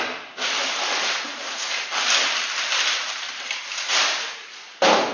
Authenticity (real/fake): real